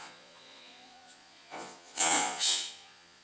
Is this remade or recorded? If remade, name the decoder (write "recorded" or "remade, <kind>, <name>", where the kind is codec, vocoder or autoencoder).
remade, vocoder, Vocos